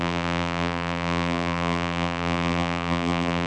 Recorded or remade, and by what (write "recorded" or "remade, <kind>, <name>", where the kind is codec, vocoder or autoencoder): remade, vocoder, BigVGAN v2